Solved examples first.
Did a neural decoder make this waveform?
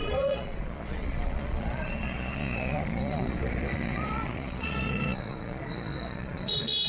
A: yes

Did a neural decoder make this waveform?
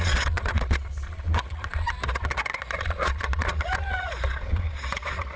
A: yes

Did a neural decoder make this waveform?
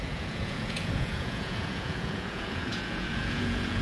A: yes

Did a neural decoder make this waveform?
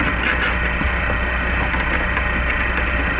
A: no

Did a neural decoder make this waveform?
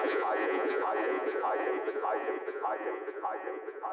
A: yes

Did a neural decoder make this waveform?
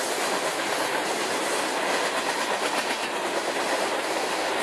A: no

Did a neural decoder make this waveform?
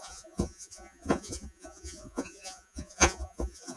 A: yes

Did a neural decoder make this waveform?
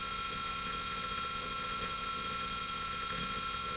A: yes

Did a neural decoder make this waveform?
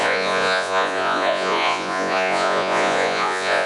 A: yes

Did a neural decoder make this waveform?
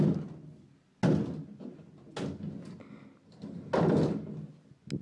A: no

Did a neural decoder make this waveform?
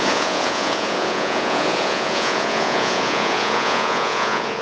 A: yes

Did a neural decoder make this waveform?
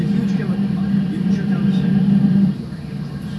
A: no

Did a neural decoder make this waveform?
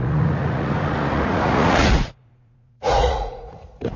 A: yes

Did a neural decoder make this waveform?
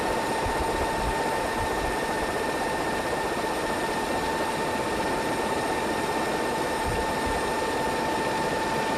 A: no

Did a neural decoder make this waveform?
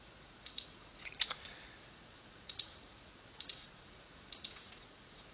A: yes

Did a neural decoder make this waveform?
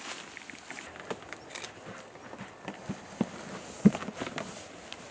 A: no